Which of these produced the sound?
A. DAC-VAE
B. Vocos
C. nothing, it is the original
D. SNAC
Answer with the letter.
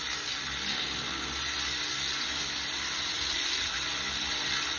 C